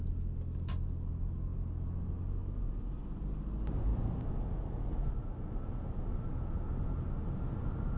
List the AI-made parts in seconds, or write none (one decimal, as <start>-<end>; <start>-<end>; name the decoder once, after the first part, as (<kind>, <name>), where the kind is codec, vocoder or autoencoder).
none

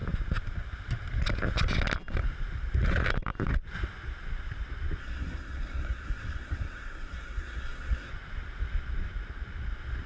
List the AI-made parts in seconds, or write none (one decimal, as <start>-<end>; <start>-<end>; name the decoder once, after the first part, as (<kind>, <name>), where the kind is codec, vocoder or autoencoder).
5.0-8.1 (codec, SNAC)

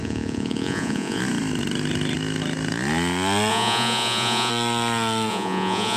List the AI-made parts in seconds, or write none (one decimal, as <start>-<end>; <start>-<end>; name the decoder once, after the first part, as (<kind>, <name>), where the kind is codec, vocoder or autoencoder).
0.0-1.2 (vocoder, Vocos); 3.5-4.5; 5.3-6.0

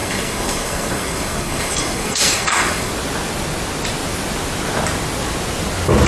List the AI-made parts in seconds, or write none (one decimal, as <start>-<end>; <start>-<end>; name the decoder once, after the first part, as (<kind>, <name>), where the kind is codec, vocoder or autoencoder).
0.0-2.9 (codec, SNAC)

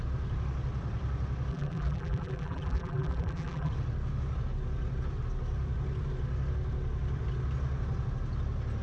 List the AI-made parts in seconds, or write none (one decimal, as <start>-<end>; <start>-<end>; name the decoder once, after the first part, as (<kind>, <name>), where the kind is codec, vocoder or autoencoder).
1.5-3.7 (vocoder, BigVGAN v2)

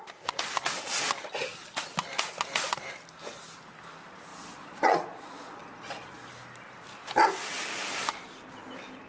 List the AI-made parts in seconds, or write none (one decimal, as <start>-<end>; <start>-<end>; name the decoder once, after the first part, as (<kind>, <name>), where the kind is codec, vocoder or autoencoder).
4.3-6.3 (vocoder, Vocos)